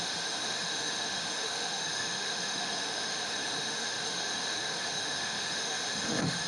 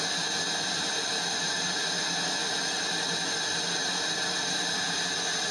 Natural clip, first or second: second